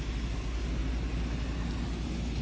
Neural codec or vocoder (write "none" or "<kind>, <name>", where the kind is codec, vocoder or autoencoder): none